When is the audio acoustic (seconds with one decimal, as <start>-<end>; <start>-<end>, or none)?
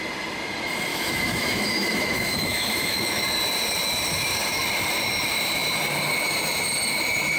0.0-0.9; 3.2-7.4